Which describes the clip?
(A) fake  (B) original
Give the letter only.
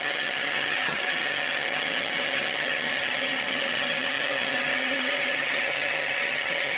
A